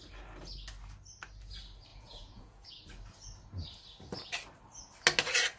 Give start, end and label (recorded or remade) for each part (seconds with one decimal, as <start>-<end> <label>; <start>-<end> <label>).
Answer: 0.0-1.9 recorded; 1.9-2.7 remade; 2.7-5.6 recorded